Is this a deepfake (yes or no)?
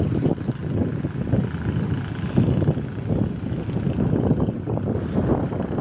no